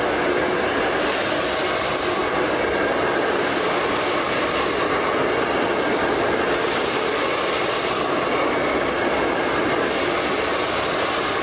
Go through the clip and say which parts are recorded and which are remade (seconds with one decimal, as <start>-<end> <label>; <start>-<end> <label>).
0.0-11.4 recorded